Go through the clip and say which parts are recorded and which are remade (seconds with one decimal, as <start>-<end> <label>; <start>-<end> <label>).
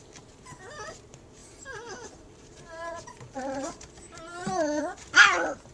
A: 0.0-1.4 recorded; 1.4-4.8 remade; 4.8-5.7 recorded